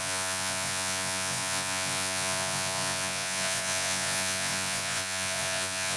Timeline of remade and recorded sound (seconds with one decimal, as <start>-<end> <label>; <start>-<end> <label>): 0.0-6.0 remade